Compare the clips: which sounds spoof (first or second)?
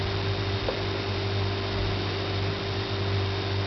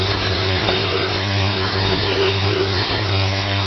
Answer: second